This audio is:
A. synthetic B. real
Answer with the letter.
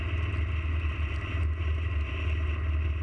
B